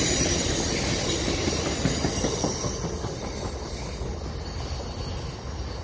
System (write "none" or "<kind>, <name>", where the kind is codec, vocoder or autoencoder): none